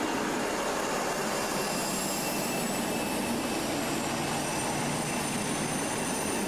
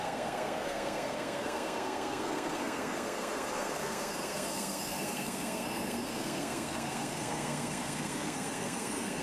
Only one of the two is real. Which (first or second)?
first